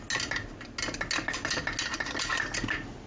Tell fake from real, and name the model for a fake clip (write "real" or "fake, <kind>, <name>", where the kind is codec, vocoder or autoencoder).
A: real